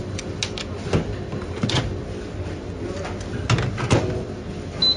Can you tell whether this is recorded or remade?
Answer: recorded